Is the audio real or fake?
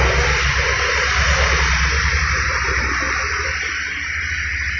real